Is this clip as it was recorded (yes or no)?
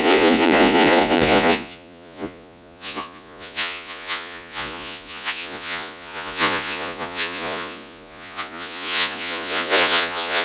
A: no